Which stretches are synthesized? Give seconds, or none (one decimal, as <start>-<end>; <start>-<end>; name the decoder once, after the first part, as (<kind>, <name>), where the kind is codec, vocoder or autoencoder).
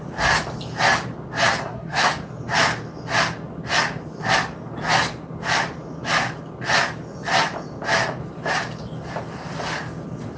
1.6-2.1 (codec, SNAC)